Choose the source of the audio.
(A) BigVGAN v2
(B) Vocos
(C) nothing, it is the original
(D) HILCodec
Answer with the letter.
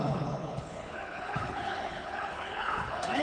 D